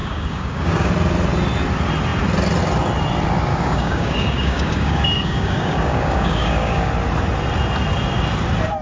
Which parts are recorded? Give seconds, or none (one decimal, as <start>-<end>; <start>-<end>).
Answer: 0.9-3.5; 6.9-8.8